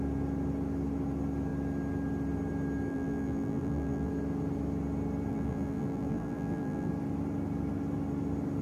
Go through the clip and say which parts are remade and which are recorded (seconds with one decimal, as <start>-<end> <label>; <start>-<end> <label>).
0.0-2.9 recorded; 2.9-4.1 remade; 4.1-5.3 recorded; 5.3-6.9 remade; 6.9-8.6 recorded